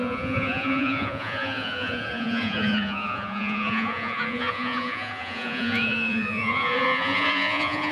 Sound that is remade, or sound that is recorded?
remade